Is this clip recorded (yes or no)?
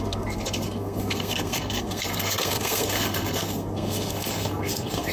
no